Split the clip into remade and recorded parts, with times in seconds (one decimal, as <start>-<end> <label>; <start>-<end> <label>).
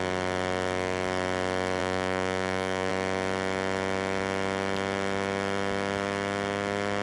0.0-1.8 recorded; 1.8-2.9 remade; 2.9-7.0 recorded